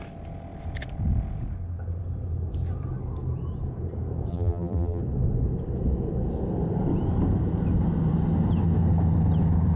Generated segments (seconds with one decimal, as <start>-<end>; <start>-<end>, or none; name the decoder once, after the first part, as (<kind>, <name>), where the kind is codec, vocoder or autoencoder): 4.3-5.0 (vocoder, BigVGAN v2)